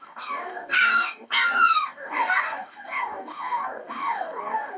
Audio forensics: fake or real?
fake